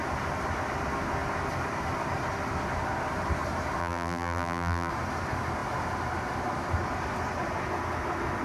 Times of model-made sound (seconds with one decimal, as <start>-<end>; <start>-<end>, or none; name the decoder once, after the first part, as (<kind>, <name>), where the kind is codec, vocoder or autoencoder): 3.8-4.9 (vocoder, BigVGAN v2)